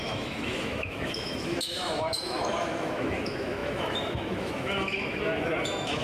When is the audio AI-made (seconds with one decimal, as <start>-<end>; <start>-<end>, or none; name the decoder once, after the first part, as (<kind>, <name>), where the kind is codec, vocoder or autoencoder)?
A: 0.0-6.0 (autoencoder, DAC-VAE)